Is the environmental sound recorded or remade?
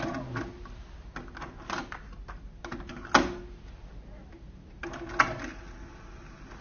recorded